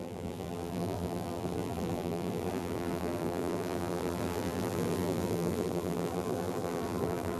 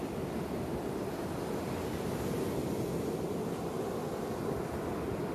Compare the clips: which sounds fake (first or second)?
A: first